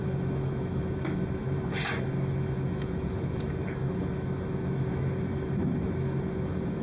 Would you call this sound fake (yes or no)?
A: yes